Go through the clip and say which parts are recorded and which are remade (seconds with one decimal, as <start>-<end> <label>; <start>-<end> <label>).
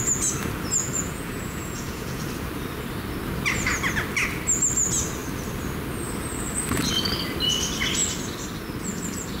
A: 0.0-0.8 recorded; 0.8-2.2 remade; 2.2-9.4 recorded